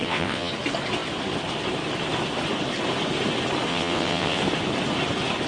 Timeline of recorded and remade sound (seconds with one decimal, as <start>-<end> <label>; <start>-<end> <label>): 0.0-0.5 remade; 0.5-3.7 recorded; 3.7-4.4 remade; 4.4-5.5 recorded